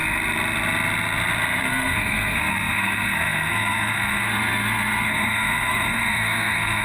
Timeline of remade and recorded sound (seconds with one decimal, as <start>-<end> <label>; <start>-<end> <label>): 0.0-1.6 recorded; 1.6-6.8 remade